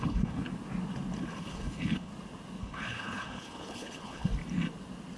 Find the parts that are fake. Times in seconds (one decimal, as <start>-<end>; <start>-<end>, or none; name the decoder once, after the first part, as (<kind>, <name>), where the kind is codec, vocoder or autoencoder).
0.0-0.4 (codec, HILCodec); 1.4-2.1; 2.6-4.3